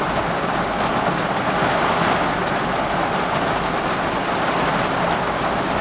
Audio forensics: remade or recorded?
recorded